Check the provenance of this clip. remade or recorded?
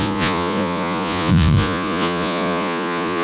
remade